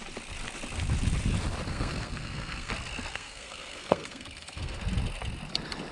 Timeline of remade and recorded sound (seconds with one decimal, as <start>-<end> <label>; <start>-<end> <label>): 0.0-1.7 recorded; 1.7-2.7 remade; 2.7-3.1 recorded; 3.1-4.8 remade; 4.8-5.9 recorded